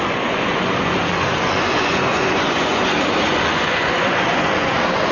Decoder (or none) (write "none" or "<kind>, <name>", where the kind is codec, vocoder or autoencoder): vocoder, Vocos